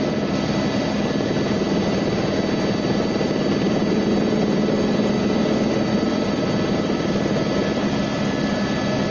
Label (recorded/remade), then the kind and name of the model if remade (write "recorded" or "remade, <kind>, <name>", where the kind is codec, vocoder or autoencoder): recorded